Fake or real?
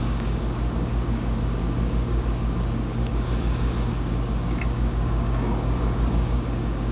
fake